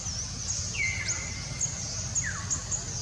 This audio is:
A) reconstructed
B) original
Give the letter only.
B